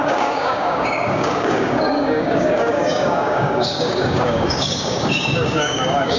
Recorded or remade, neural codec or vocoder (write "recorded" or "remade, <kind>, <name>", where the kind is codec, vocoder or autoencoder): remade, codec, DAC